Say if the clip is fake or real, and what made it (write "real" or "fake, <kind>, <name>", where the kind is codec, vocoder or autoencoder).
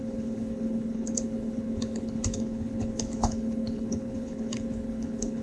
fake, codec, HILCodec